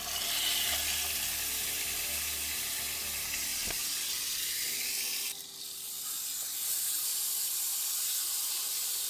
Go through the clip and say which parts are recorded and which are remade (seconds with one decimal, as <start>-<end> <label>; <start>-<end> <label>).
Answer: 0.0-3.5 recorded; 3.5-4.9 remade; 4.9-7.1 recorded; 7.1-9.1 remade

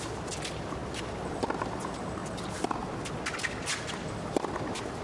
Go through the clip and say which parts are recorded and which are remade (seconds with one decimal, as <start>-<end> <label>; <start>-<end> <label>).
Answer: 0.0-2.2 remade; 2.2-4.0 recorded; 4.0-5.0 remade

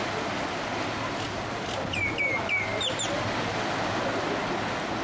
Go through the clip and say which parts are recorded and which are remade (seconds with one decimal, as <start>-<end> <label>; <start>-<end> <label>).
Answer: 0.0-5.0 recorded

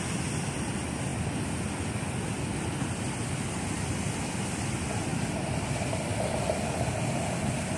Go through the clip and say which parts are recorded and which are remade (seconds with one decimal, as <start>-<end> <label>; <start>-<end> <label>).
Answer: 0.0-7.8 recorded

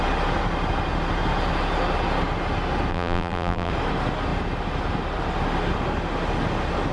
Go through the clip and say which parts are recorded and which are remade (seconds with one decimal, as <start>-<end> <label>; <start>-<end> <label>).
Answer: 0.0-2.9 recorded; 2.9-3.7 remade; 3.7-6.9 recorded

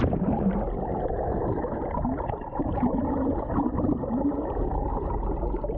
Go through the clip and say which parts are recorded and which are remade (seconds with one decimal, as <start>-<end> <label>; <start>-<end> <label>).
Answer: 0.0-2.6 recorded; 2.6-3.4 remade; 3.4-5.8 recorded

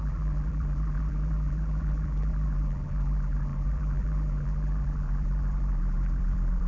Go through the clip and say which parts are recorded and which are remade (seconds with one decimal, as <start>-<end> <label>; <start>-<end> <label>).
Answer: 0.0-6.7 remade